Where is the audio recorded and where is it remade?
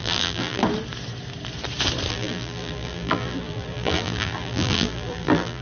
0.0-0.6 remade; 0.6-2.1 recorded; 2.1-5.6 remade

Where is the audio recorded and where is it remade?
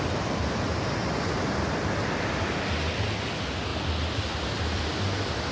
0.0-5.5 recorded